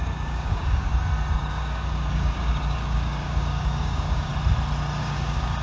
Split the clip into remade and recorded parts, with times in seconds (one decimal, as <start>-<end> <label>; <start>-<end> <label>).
0.0-0.9 remade; 0.9-1.5 recorded; 1.5-4.3 remade; 4.3-5.0 recorded; 5.0-5.6 remade